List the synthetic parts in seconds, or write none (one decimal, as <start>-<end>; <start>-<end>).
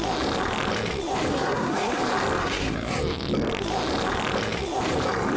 1.3-2.0; 2.4-3.0